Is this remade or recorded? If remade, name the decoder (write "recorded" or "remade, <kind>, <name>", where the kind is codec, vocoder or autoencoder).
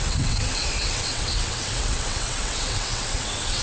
remade, vocoder, WaveNeXt